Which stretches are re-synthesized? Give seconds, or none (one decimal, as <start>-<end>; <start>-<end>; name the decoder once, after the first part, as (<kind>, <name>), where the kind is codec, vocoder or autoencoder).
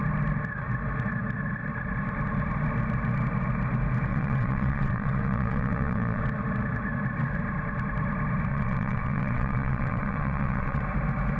4.1-6.2 (vocoder, WaveNeXt); 8.5-10.8